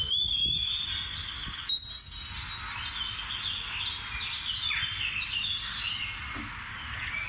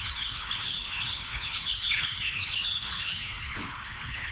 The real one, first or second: first